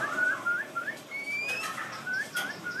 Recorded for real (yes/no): no